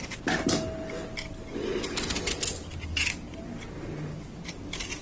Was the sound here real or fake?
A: real